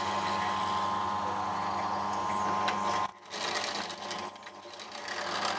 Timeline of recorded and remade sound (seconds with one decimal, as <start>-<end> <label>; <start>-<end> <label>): 0.0-5.6 recorded